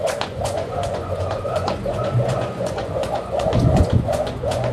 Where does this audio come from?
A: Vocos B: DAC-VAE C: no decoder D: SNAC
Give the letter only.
A